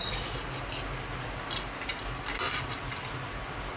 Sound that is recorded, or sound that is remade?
recorded